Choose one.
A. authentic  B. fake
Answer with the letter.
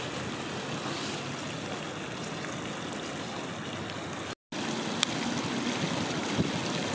A